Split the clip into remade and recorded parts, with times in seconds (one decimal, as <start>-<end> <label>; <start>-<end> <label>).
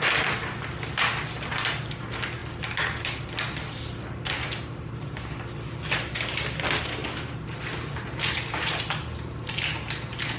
0.0-10.4 recorded